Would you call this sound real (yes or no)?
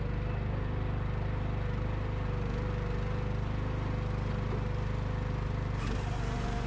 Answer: yes